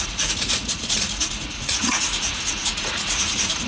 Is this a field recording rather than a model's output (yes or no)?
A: no